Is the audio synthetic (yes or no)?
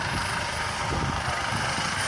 no